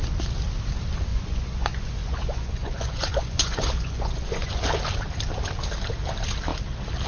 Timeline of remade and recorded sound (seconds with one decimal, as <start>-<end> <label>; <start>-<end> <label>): 0.0-1.1 recorded; 1.1-4.7 remade; 4.7-7.1 recorded